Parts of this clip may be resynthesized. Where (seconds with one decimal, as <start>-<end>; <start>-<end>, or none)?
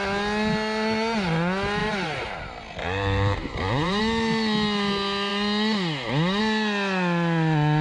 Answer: 1.8-4.0